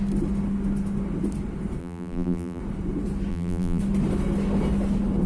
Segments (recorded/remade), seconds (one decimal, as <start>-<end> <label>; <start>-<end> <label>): 0.0-1.8 recorded; 1.8-2.6 remade; 2.6-3.3 recorded; 3.3-3.8 remade; 3.8-5.3 recorded